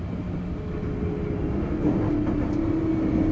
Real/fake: real